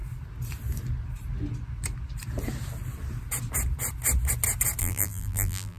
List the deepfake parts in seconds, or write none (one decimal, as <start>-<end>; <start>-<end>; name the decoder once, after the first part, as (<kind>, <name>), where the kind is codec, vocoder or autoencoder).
4.8-5.8 (vocoder, BigVGAN v2)